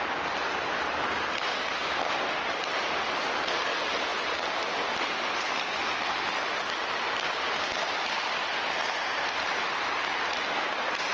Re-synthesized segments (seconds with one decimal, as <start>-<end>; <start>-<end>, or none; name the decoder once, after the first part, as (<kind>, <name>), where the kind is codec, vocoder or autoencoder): none